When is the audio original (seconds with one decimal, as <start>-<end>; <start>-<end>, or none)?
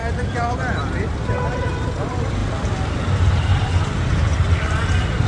0.0-5.3